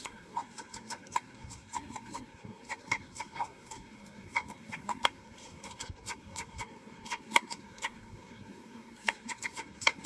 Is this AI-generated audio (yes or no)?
yes